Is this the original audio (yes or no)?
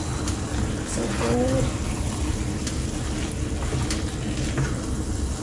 yes